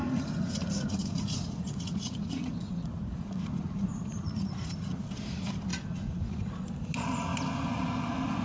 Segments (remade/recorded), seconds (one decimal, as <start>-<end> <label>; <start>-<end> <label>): 0.0-5.0 remade; 5.0-5.7 recorded; 5.7-6.5 remade; 6.5-8.4 recorded